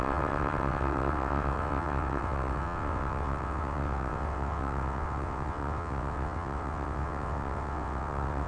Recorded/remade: remade